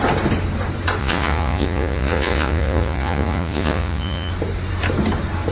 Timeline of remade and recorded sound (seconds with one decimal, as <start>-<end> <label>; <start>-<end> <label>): 0.0-1.0 recorded; 1.0-4.3 remade; 4.3-5.5 recorded